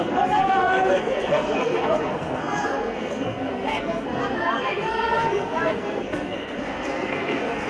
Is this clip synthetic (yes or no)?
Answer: yes